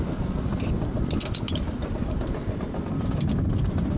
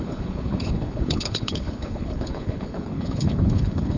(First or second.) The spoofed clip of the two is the second